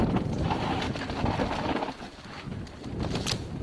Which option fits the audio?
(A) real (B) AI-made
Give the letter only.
A